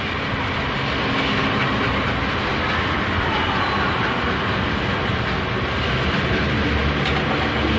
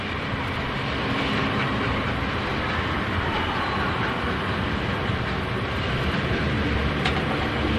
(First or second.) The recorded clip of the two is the first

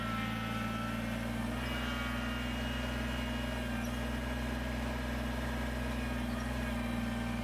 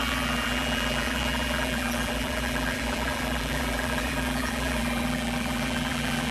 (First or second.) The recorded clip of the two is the first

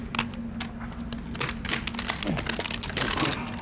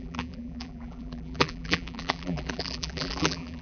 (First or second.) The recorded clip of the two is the first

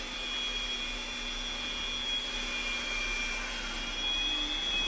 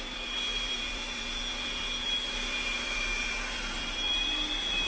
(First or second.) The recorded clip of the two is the first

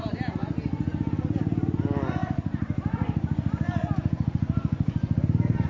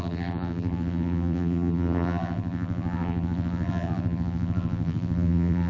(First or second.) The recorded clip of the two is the first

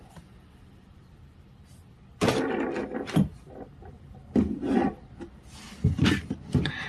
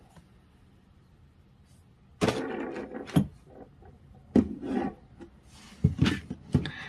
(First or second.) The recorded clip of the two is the second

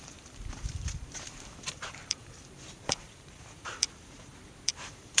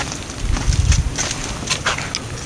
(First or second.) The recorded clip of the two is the second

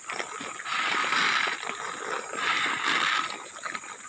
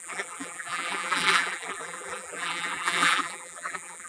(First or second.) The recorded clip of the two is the first